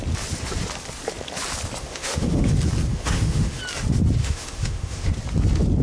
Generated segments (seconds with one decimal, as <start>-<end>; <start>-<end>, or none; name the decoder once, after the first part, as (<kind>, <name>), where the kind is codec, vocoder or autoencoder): 1.8-2.5 (autoencoder, DAC-VAE); 2.9-3.6; 4.2-5.1